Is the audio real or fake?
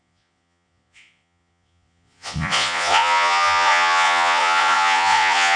fake